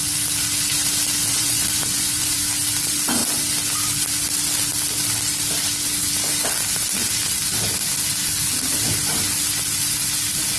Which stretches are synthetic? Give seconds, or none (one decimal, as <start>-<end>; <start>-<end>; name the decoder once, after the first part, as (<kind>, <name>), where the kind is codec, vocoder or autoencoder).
1.3-2.4 (vocoder, Vocos)